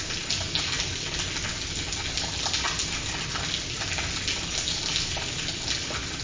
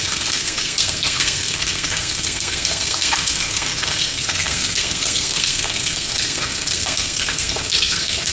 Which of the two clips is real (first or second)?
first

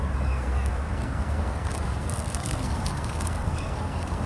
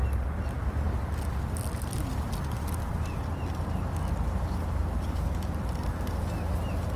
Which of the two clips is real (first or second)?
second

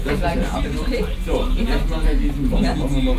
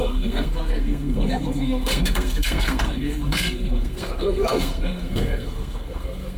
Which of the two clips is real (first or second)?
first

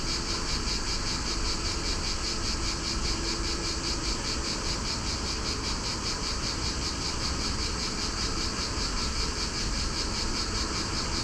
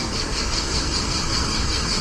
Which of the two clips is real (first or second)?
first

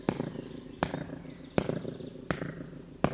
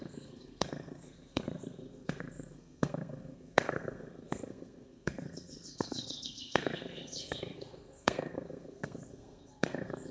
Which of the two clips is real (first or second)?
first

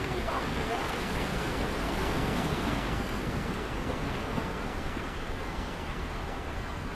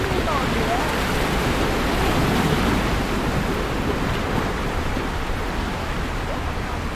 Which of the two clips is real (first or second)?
second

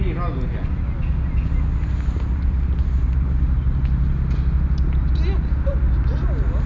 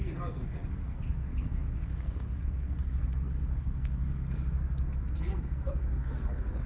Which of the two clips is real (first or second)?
first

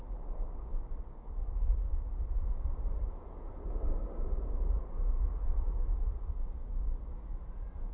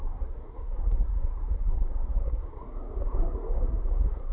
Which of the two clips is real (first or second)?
first